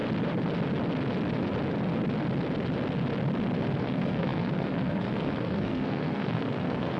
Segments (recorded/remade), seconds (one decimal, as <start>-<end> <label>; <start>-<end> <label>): 0.0-3.8 recorded; 3.8-7.0 remade